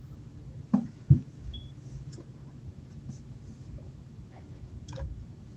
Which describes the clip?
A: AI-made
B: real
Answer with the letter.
A